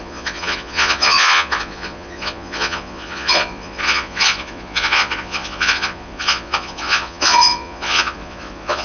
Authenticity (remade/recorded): remade